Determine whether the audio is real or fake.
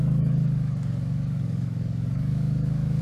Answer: fake